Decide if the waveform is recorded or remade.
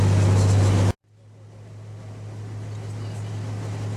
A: recorded